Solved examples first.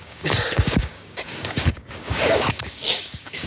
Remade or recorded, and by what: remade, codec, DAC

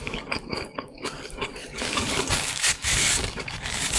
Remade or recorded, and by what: remade, codec, DAC